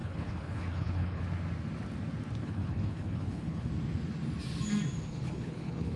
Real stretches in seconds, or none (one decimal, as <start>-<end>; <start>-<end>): 1.2-2.4; 3.7-5.1